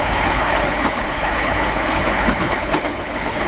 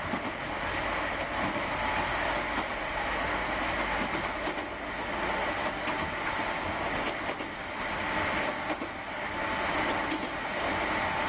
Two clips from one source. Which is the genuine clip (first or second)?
second